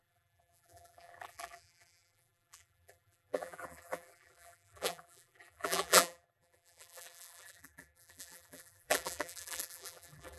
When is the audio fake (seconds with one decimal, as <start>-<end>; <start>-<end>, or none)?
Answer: 0.0-10.4